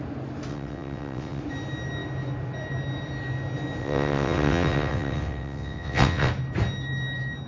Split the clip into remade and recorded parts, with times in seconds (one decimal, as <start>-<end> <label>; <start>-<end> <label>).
0.0-0.5 recorded; 0.5-1.4 remade; 1.4-3.8 recorded; 3.8-6.3 remade; 6.3-7.5 recorded